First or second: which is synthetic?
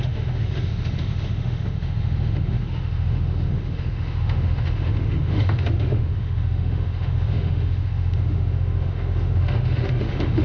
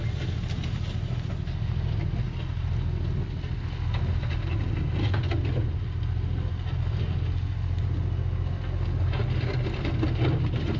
first